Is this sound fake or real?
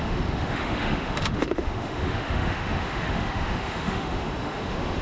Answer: fake